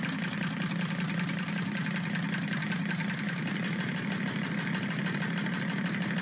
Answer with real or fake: real